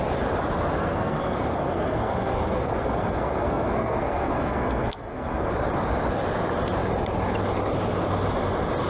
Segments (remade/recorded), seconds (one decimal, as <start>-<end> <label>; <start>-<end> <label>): 0.0-0.8 recorded; 0.8-5.5 remade; 5.5-8.9 recorded